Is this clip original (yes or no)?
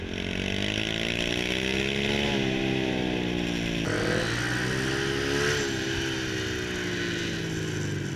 yes